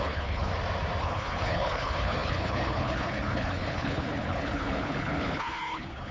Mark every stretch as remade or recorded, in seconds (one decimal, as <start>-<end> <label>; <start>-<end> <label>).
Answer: 0.0-0.5 remade; 0.5-1.0 recorded; 1.0-6.1 remade